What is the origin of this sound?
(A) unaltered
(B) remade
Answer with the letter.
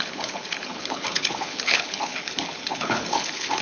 B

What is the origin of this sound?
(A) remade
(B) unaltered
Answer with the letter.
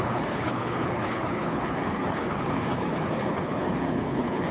A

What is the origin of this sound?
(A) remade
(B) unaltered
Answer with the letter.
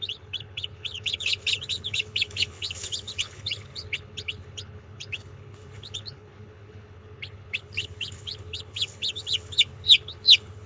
A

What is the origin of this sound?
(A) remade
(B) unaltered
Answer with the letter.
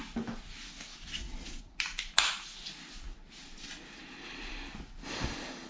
B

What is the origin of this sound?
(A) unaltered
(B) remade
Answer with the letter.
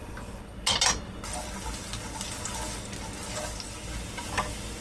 A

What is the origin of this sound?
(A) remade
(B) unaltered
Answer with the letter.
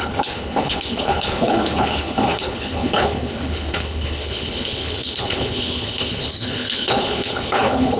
A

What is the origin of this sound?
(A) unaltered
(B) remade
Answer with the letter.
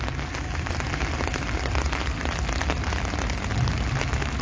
A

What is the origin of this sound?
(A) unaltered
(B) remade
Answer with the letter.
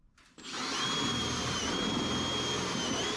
A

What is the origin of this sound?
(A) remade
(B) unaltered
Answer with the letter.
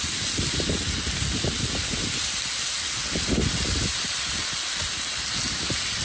B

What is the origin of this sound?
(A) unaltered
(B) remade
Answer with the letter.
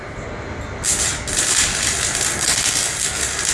A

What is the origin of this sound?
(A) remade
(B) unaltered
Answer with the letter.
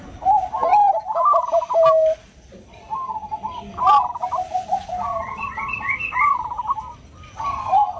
B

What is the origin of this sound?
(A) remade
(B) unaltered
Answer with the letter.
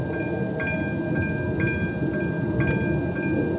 B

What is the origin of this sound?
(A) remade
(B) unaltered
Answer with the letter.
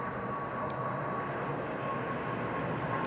B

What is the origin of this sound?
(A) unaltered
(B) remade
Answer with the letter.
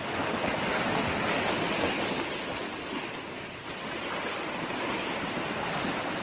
A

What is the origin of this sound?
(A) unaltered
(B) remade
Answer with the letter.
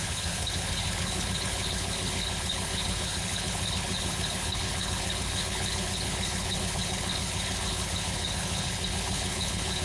B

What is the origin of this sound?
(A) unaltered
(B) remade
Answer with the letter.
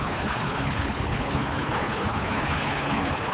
B